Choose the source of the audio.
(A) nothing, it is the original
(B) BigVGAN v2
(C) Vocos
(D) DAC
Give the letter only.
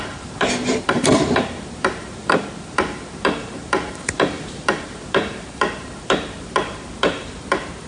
B